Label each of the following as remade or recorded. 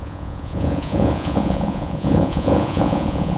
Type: remade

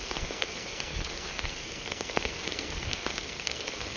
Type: remade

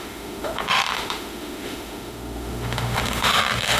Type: remade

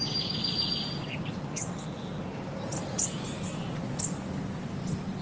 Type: recorded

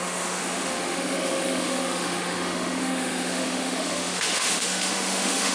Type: remade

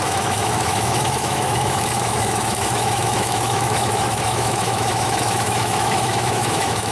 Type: remade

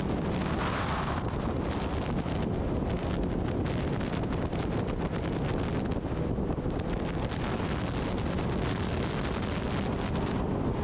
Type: recorded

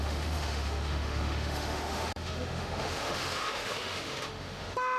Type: remade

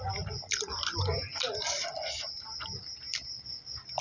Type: recorded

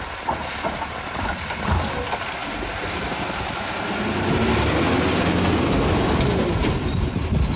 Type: recorded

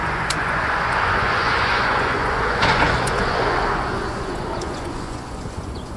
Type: remade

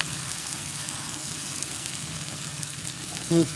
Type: remade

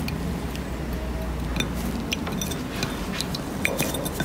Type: recorded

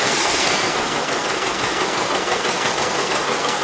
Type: remade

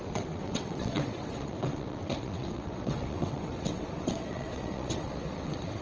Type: remade